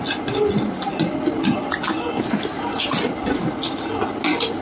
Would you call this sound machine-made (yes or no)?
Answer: no